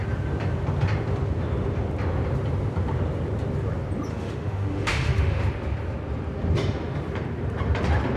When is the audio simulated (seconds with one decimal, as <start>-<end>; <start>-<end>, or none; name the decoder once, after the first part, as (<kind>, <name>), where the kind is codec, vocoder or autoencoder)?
4.1-5.4 (autoencoder, DAC-VAE)